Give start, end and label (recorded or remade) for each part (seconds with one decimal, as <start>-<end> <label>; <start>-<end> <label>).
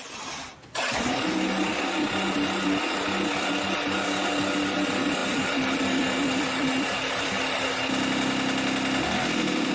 0.0-9.7 recorded